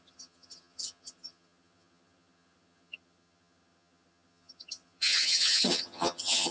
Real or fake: fake